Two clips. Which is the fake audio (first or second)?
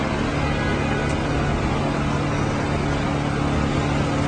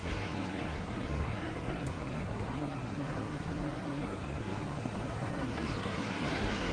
second